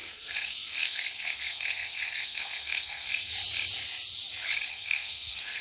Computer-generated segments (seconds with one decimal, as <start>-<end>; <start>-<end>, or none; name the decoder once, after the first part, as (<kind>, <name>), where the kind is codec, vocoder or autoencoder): 0.0-3.3 (codec, SNAC); 4.7-5.6